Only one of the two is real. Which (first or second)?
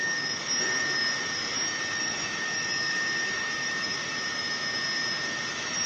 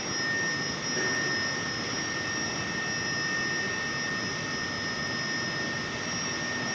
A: second